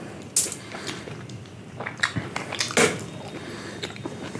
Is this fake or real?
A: real